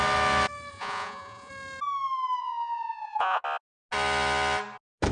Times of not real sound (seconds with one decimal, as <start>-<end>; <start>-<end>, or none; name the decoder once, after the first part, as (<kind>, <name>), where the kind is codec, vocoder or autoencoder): 0.7-1.5 (vocoder, Vocos); 2.4-3.4